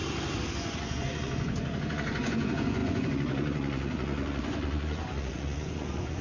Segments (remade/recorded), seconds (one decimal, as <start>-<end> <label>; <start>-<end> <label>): 0.0-0.5 recorded; 0.5-6.2 remade